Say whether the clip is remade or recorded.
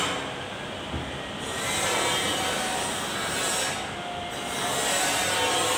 recorded